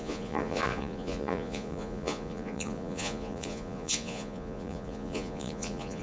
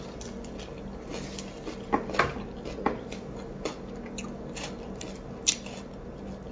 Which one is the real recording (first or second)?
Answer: second